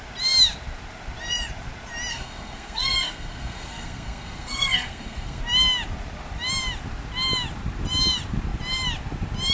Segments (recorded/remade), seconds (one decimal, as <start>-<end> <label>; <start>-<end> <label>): 0.0-2.1 recorded; 2.1-5.4 remade; 5.4-9.5 recorded